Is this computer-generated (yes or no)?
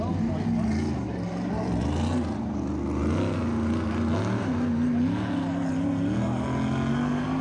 no